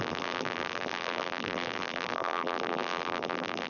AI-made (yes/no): yes